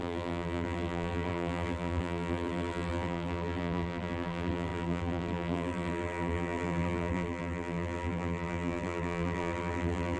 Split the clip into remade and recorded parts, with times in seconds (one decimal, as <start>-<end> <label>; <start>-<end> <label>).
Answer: 0.0-10.2 remade